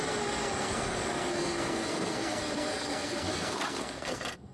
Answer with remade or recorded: remade